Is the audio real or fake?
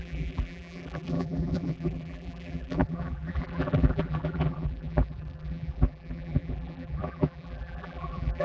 fake